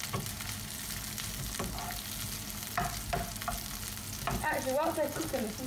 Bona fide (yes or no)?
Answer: yes